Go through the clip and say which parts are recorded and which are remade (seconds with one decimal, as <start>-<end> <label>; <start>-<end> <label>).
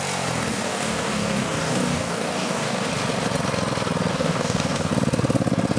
0.0-0.5 recorded; 0.5-2.9 remade; 2.9-4.1 recorded; 4.1-4.9 remade; 4.9-5.8 recorded